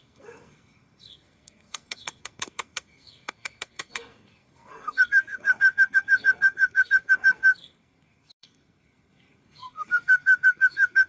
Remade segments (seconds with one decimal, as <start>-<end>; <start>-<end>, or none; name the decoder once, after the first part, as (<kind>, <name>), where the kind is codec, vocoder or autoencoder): 0.0-11.1 (codec, SNAC)